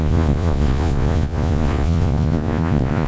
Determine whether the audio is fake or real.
fake